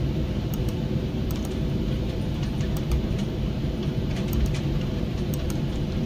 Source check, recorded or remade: remade